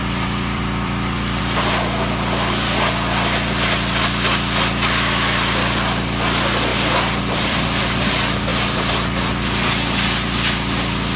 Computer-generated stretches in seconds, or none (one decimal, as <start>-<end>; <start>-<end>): 0.0-1.4; 6.7-7.8